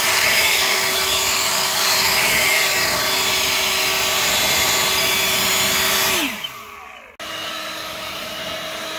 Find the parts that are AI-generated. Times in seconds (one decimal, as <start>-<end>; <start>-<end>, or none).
0.0-3.0; 7.3-8.4